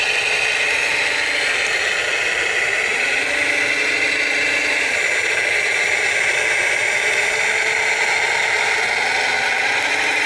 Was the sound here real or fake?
real